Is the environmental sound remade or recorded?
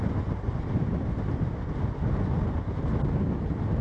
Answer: recorded